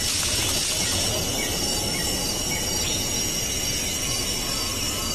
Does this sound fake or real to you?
fake